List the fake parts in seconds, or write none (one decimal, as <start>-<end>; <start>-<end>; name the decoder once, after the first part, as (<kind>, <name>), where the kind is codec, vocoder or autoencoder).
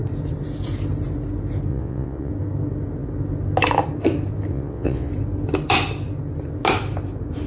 1.7-2.3 (vocoder, WaveNeXt); 4.5-5.1